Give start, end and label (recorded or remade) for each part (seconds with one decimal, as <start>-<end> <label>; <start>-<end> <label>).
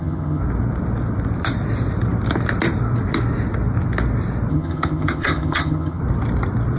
0.0-0.4 remade; 0.4-4.5 recorded; 4.5-6.0 remade; 6.0-6.8 recorded